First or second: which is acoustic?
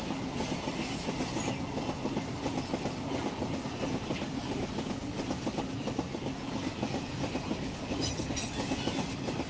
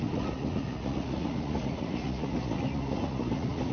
first